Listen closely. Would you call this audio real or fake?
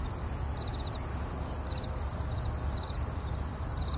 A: real